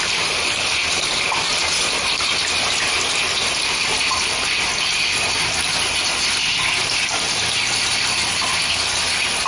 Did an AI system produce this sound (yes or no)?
no